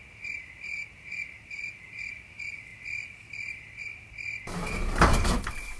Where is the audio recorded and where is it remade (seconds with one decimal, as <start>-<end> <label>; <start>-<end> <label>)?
0.0-5.8 recorded

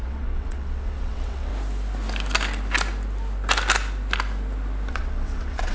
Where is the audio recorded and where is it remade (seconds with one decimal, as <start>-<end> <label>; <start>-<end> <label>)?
0.0-1.5 remade; 1.5-4.9 recorded; 4.9-5.7 remade

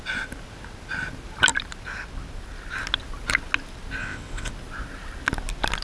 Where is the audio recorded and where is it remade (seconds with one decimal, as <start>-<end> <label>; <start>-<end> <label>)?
0.0-4.0 recorded; 4.0-4.5 remade; 4.5-5.8 recorded